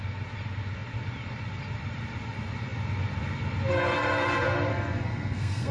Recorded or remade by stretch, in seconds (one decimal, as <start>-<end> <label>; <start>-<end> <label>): 0.0-4.7 recorded; 4.7-5.7 remade